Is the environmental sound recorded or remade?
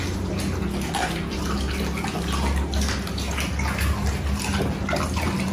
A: recorded